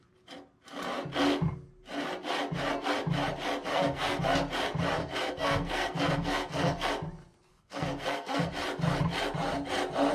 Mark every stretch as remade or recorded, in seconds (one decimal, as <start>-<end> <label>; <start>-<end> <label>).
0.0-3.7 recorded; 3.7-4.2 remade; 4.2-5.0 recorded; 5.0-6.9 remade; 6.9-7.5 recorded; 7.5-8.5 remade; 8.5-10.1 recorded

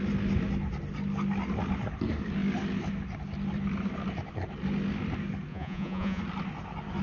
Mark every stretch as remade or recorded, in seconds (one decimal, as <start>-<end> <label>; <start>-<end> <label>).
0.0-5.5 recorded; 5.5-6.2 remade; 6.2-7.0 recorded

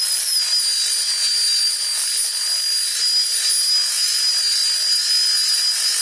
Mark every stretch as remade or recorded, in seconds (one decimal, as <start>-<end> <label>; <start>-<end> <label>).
0.0-6.0 recorded